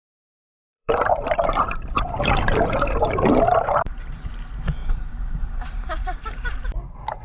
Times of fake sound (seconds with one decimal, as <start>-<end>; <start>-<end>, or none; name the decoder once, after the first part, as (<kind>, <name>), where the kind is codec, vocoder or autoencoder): 0.0-4.3 (vocoder, BigVGAN v2); 4.8-6.6